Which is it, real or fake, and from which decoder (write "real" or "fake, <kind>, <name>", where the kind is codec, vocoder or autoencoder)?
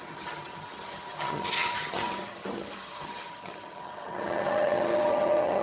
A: fake, vocoder, HiFi-GAN